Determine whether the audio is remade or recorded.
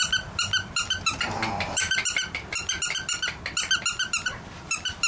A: recorded